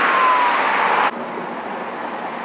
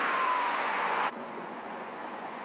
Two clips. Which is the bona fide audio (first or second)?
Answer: first